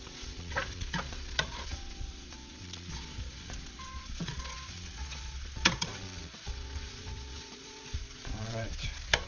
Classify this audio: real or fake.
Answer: fake